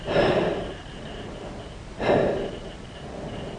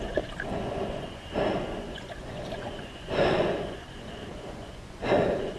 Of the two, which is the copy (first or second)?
second